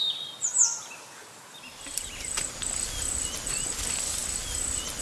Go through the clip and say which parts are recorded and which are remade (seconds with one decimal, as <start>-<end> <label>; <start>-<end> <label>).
0.0-5.0 recorded